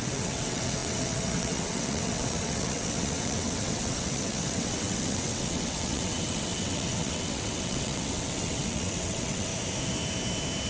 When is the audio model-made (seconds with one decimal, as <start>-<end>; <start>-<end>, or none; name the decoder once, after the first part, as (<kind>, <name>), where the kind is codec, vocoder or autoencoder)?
0.0-9.5 (vocoder, WaveNeXt)